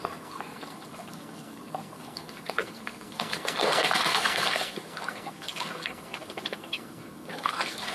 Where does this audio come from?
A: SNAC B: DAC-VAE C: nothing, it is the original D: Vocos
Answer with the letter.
A